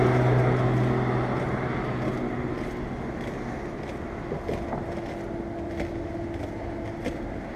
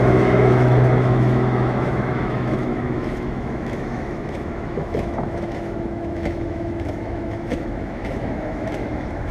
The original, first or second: first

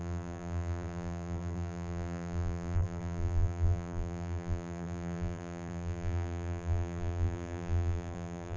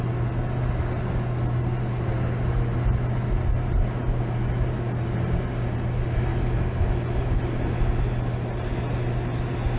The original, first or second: second